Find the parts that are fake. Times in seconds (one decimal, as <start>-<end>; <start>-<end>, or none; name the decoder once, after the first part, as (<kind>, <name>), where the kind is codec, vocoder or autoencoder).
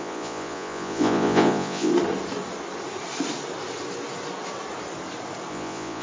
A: 0.0-1.9 (vocoder, Vocos); 5.5-6.0